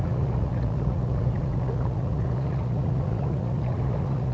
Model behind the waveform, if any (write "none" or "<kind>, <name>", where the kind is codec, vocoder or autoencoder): vocoder, Vocos